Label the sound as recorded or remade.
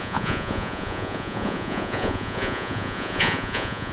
remade